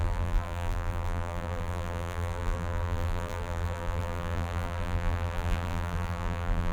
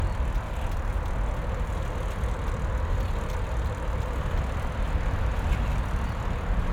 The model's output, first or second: first